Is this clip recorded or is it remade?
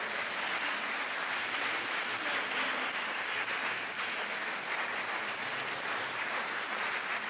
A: recorded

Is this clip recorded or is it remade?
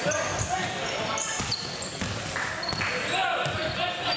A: recorded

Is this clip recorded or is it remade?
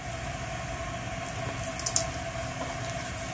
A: recorded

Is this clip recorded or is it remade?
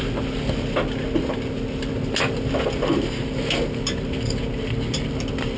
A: recorded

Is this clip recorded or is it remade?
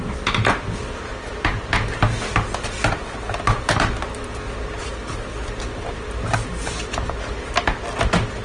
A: recorded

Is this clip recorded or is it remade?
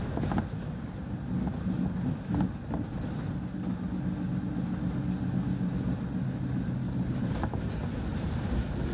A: recorded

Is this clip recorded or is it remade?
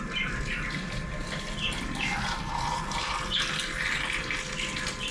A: recorded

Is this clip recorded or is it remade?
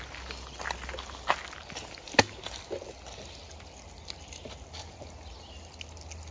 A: recorded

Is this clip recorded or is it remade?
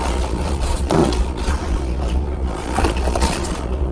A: remade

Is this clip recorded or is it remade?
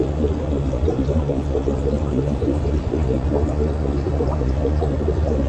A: remade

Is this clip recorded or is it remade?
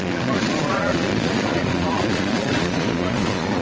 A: remade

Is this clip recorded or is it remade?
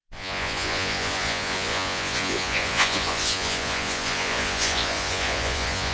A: remade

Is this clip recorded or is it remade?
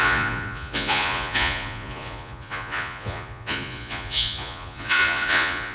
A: remade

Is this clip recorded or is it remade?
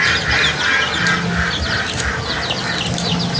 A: recorded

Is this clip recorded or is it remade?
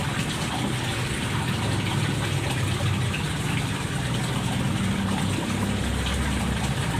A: recorded